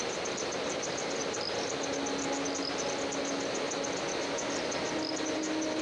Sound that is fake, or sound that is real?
real